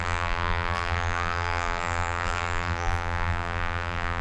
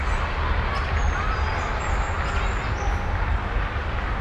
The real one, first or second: second